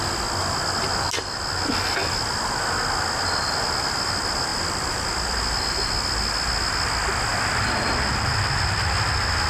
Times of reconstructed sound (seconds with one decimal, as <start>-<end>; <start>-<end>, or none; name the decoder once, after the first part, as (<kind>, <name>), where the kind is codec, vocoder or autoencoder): 4.5-5.1 (vocoder, BigVGAN v2); 7.3-8.3